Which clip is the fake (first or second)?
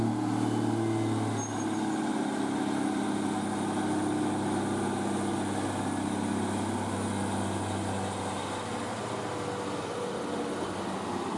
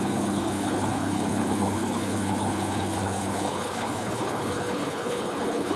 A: second